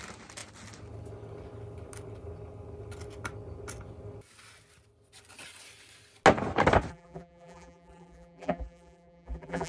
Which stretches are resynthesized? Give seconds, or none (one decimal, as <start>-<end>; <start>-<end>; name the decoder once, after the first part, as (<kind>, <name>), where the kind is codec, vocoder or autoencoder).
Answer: 6.9-9.7 (vocoder, BigVGAN v2)